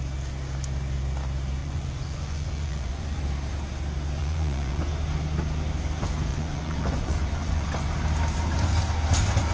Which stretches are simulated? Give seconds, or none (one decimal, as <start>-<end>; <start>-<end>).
1.6-3.2; 4.2-4.8; 6.3-7.9